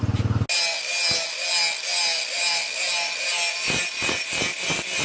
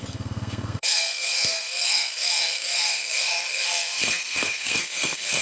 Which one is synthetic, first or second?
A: second